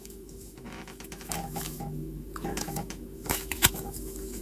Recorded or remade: remade